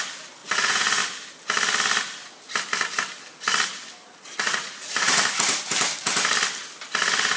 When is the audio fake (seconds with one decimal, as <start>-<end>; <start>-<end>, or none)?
0.4-1.0; 4.3-5.6